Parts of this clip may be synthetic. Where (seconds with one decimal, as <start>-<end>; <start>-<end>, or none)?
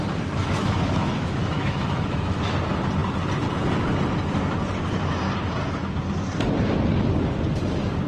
0.4-2.4